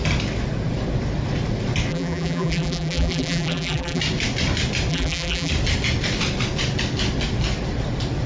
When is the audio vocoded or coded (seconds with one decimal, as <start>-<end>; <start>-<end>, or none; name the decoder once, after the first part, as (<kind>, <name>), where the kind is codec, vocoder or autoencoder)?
1.9-4.0 (vocoder, BigVGAN v2); 4.9-5.5

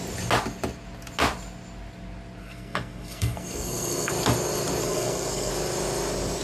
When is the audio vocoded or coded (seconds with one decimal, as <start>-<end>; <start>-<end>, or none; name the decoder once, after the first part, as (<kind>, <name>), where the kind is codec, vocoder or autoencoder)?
2.4-4.1 (codec, SNAC); 4.8-5.5

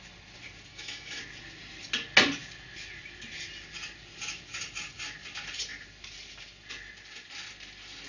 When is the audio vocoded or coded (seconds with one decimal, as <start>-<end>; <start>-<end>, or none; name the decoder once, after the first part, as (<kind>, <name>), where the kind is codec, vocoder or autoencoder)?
0.7-1.2 (autoencoder, DAC-VAE)

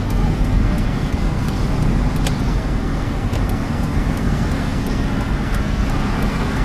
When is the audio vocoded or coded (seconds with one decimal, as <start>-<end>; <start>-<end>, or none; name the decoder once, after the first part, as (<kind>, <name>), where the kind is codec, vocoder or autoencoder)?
0.0-1.6 (codec, SNAC); 2.4-6.6

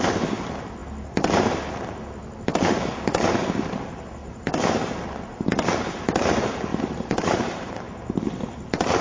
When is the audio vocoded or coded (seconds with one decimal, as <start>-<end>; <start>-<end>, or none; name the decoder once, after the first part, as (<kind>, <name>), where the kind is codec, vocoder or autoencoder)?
4.2-5.0 (vocoder, BigVGAN v2); 6.7-7.7

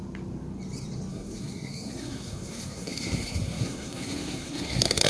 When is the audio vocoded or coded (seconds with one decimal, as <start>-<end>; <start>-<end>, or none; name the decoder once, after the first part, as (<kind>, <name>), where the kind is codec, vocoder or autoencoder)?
1.1-5.1 (codec, SNAC)

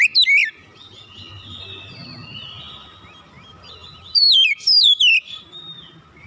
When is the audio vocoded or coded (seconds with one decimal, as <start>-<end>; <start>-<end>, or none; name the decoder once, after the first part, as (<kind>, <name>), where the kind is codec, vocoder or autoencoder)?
0.4-1.6 (vocoder, BigVGAN v2); 3.5-5.0